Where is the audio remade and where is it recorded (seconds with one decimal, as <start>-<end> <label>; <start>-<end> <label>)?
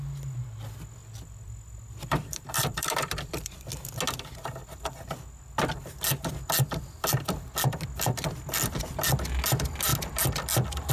0.0-1.0 recorded; 1.0-3.7 remade; 3.7-10.9 recorded